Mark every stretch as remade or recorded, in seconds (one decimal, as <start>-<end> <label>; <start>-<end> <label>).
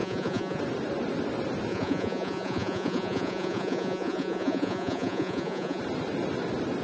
0.0-0.6 remade; 0.6-1.7 recorded; 1.7-5.8 remade; 5.8-6.8 recorded